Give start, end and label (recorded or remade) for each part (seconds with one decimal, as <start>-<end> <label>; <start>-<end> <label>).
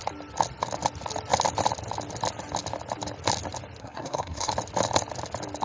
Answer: 0.0-3.8 recorded; 3.8-4.5 remade; 4.5-5.6 recorded